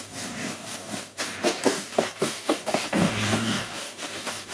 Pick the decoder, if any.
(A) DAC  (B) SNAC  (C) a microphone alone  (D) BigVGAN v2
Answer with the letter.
A